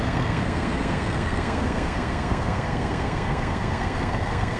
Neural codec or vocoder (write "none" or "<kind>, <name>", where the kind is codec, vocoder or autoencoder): codec, SNAC